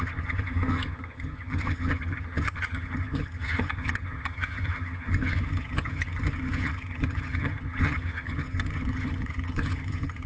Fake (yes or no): yes